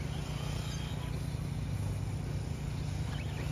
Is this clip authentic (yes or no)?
yes